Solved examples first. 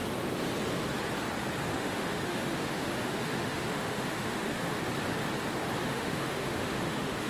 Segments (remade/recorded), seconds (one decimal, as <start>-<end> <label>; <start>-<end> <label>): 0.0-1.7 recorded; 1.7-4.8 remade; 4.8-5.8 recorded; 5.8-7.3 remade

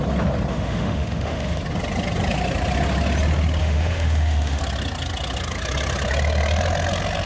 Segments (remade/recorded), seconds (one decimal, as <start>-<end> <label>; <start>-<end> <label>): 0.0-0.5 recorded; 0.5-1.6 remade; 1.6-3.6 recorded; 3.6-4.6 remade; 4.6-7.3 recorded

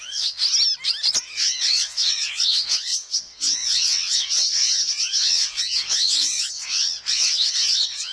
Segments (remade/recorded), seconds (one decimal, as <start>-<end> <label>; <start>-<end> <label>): 0.0-0.4 remade; 0.4-1.2 recorded; 1.2-8.1 remade

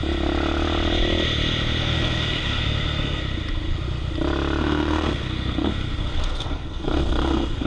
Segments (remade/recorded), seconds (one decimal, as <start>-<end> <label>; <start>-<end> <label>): 0.0-1.8 recorded; 1.8-3.2 remade; 3.2-4.6 recorded; 4.6-7.7 remade

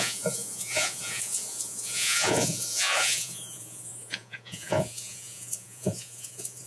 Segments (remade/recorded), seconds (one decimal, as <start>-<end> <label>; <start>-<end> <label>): 0.0-6.7 remade